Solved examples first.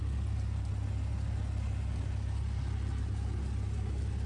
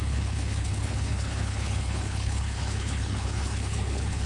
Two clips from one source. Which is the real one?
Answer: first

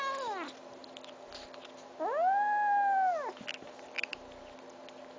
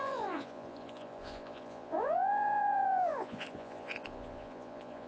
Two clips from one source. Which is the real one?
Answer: first